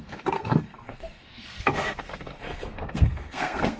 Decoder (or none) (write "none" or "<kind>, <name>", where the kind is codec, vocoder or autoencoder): codec, SNAC